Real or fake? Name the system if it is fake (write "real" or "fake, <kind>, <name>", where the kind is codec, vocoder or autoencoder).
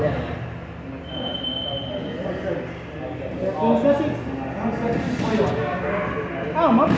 real